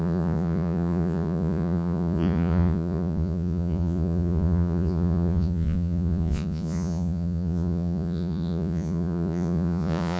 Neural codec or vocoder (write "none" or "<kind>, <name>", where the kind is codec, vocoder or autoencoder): vocoder, Vocos